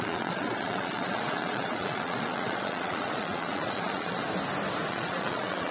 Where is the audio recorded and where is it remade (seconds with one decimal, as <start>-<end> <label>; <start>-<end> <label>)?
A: 0.0-4.2 remade; 4.2-4.9 recorded; 4.9-5.7 remade